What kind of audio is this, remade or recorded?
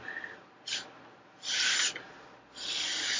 recorded